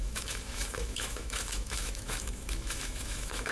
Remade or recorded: remade